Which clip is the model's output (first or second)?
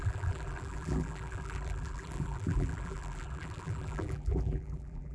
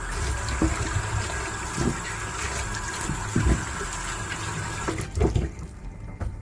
first